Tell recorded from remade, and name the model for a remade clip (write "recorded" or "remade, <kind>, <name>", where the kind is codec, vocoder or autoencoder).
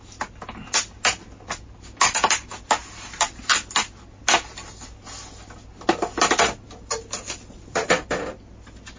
recorded